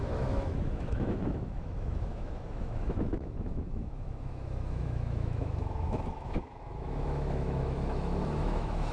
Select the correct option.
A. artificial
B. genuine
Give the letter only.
A